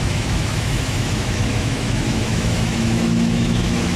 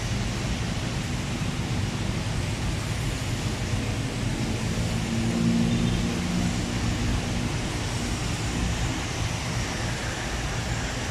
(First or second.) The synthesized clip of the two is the first